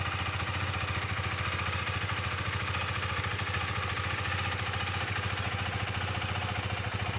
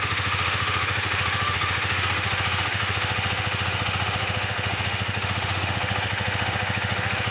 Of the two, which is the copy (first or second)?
second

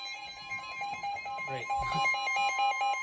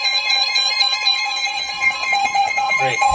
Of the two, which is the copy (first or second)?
second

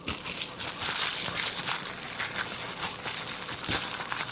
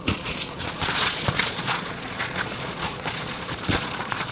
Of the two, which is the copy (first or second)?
second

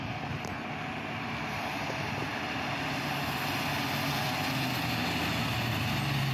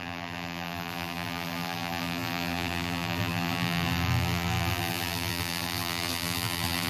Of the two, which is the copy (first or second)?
second